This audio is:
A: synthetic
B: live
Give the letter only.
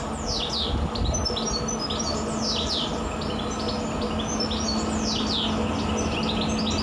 B